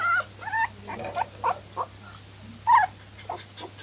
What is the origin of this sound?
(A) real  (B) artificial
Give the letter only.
A